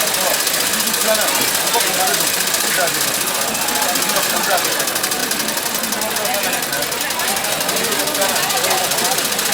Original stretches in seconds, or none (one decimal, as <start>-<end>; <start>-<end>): 0.0-9.5